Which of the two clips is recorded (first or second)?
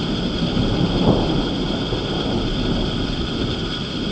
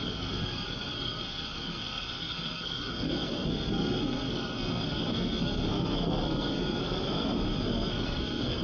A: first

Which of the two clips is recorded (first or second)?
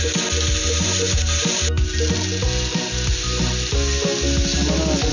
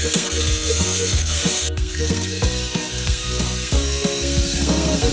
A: first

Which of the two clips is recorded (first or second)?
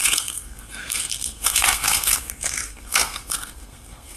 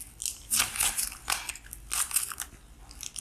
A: second